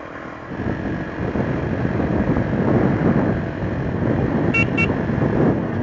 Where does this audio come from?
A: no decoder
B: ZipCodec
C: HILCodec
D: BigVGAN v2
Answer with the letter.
A